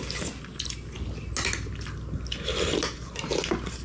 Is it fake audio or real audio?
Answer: real